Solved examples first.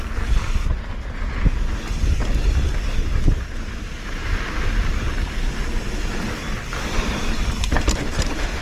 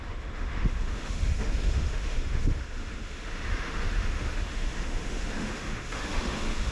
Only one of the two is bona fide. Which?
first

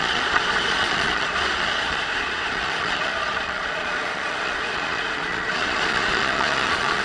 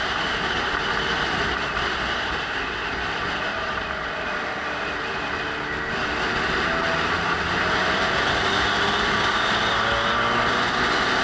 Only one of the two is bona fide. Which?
second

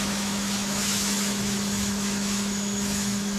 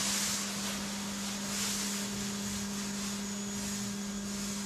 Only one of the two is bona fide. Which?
second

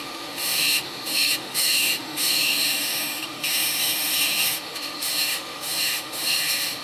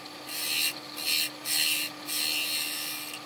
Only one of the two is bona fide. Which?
second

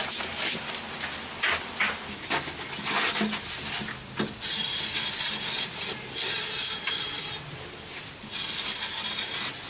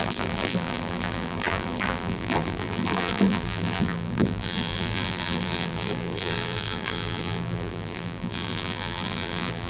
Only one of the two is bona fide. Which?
first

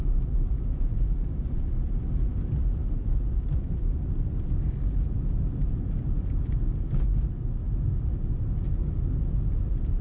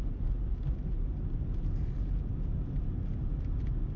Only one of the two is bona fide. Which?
second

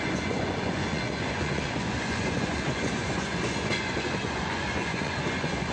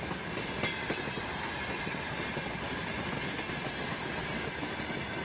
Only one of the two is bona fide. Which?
second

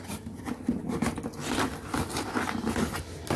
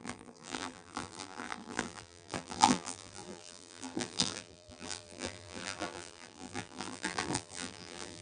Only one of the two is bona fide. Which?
first